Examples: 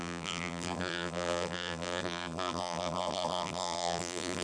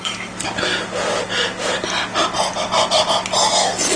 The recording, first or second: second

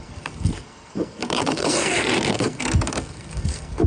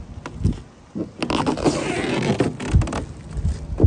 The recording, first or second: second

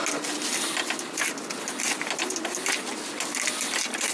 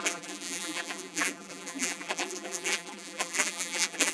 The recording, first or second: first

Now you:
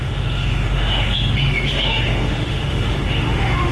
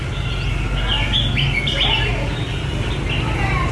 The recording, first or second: second